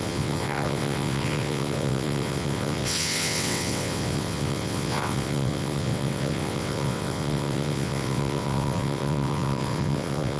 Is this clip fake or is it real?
fake